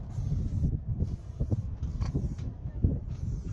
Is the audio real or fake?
fake